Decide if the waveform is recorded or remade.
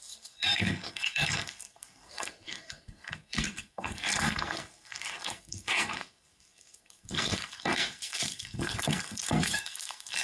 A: remade